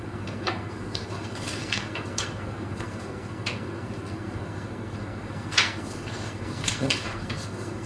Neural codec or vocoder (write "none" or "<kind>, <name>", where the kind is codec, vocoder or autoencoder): codec, SNAC